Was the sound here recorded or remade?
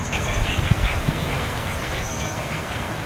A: remade